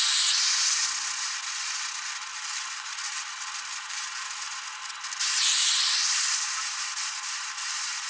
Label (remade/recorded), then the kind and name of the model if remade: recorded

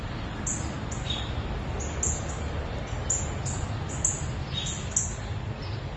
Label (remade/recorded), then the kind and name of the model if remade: recorded